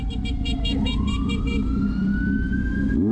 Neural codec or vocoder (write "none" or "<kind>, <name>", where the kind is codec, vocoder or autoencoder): none